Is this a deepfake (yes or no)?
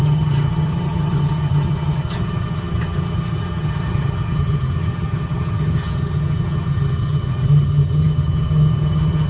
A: yes